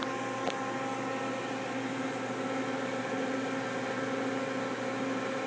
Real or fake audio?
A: real